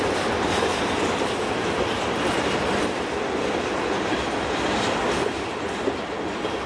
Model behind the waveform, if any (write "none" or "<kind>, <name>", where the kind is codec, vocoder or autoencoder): vocoder, BigVGAN v2